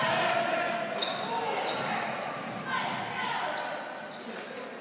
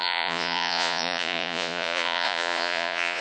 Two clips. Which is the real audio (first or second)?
first